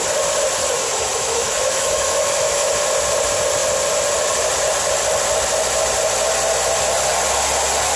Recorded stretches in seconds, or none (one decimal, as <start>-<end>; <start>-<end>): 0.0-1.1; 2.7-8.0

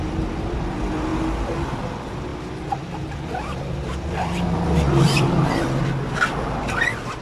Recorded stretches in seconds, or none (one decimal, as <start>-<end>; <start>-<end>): 0.0-7.2

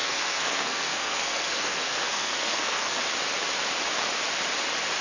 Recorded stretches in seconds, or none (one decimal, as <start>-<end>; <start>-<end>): 3.0-5.0